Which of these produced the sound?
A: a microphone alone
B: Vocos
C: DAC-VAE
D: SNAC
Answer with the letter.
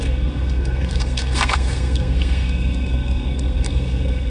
D